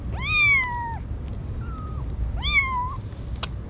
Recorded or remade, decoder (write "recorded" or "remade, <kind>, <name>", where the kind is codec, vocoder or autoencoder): recorded